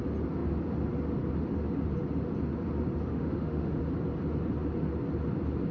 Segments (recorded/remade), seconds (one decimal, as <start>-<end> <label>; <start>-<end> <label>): 0.0-3.1 recorded; 3.1-3.8 remade; 3.8-5.7 recorded